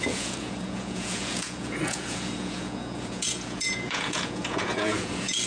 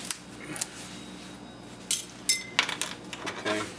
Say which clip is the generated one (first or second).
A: first